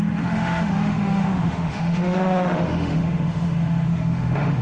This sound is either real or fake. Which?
fake